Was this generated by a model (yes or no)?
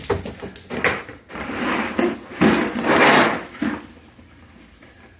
no